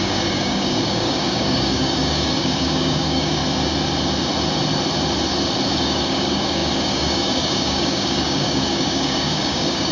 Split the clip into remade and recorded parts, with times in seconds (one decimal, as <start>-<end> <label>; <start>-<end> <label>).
0.0-3.4 remade; 3.4-5.7 recorded; 5.7-9.9 remade